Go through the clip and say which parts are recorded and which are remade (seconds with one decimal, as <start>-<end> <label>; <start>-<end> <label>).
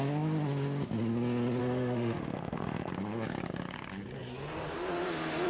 0.0-1.6 recorded; 1.6-2.9 remade; 2.9-5.5 recorded